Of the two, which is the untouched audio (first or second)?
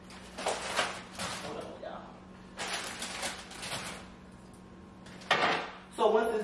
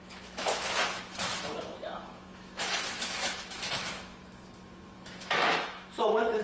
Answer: first